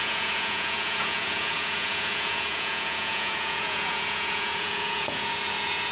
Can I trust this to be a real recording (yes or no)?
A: no